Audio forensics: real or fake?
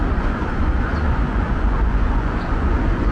fake